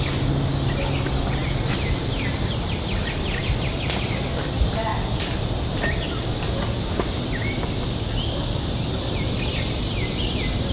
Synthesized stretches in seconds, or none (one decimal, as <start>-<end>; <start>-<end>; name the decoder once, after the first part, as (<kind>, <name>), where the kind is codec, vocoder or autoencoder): none